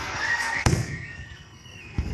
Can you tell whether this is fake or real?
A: fake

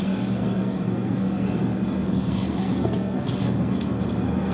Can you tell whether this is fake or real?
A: fake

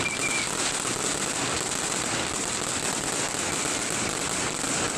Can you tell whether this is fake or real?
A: real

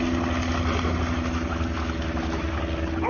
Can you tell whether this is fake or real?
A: real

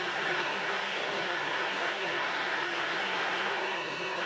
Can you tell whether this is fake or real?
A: fake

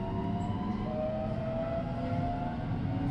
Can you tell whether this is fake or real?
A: real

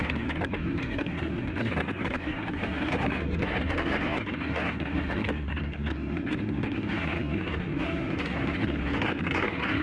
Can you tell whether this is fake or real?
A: fake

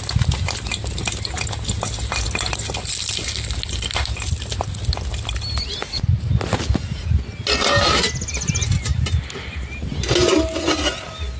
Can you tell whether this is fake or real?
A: real